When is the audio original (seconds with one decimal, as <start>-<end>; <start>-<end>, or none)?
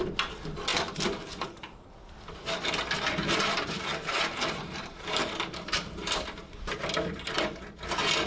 0.0-0.7; 1.9-3.2; 6.1-8.3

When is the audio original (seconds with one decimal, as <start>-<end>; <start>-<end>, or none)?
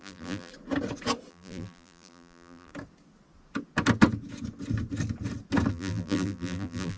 0.5-1.3; 2.7-5.7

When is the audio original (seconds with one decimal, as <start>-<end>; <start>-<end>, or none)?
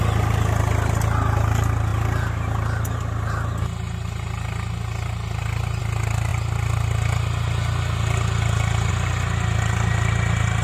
0.0-10.6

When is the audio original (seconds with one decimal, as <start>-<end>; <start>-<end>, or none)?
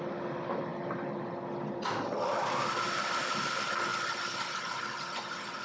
0.0-3.9; 4.8-5.6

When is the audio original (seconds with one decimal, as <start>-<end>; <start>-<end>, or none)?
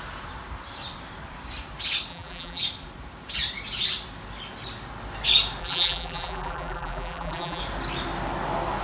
0.0-2.1; 2.6-5.6; 7.6-8.8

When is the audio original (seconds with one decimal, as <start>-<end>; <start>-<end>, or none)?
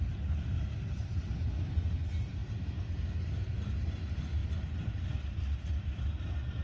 0.0-1.4; 1.9-6.6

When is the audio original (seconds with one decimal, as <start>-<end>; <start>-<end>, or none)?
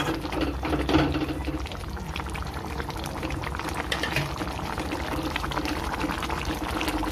0.0-1.8; 6.0-7.1